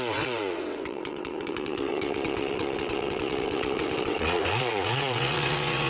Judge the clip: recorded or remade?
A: remade